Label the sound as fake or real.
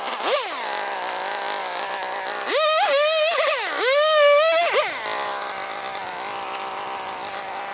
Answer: real